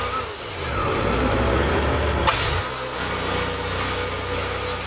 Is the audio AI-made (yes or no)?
no